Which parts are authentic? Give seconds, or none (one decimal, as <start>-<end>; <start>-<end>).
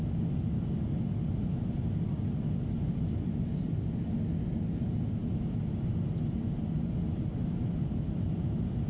0.0-8.9